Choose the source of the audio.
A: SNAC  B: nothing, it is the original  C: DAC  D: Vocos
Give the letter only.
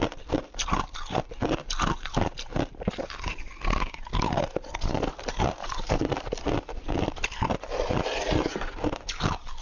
B